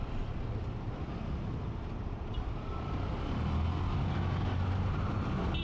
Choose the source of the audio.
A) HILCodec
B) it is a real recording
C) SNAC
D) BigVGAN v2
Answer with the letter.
B